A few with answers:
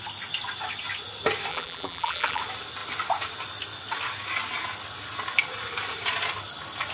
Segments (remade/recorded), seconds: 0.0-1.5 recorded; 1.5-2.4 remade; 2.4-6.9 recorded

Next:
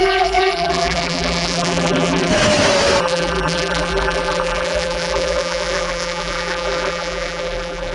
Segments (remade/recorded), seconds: 0.0-2.3 remade; 2.3-3.0 recorded; 3.0-7.9 remade

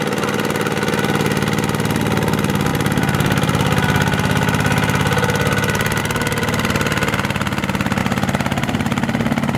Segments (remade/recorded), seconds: 0.0-8.0 recorded; 8.0-9.6 remade

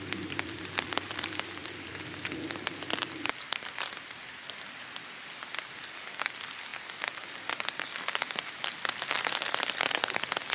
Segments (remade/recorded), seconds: 0.0-10.5 remade

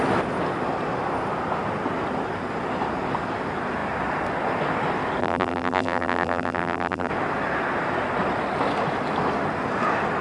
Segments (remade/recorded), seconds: 0.0-5.2 recorded; 5.2-7.1 remade; 7.1-10.2 recorded